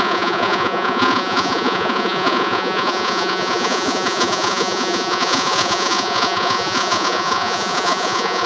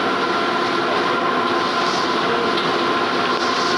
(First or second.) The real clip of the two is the second